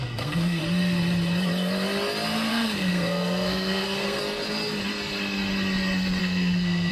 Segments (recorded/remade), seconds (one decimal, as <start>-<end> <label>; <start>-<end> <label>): 0.0-0.6 remade; 0.6-2.5 recorded; 2.5-4.2 remade; 4.2-6.2 recorded; 6.2-6.9 remade